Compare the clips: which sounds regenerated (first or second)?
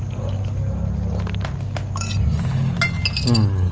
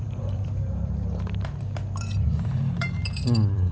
second